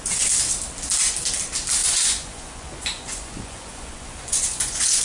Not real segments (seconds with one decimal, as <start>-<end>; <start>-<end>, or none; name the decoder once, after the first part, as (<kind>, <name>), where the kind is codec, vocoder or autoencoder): 1.8-5.0 (vocoder, Vocos)